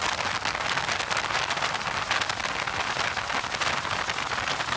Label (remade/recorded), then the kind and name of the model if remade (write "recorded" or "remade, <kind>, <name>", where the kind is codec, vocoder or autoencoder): recorded